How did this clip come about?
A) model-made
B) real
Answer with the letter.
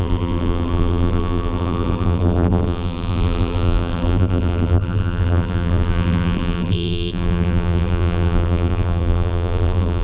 A